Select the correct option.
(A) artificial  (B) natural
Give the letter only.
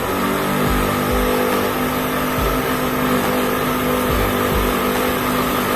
B